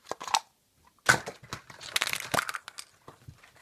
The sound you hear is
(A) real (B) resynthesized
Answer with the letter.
A